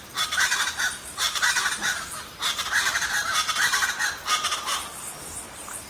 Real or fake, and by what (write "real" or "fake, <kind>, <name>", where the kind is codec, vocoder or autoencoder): real